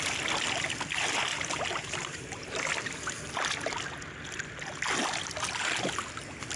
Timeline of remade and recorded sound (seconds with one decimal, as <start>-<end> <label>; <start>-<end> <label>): 0.0-1.3 recorded; 1.3-2.7 remade; 2.7-6.6 recorded